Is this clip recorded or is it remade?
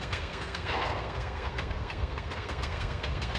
remade